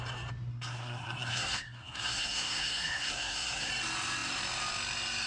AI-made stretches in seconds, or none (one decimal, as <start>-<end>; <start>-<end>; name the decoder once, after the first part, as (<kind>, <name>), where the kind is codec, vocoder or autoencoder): 0.5-3.7 (codec, SNAC)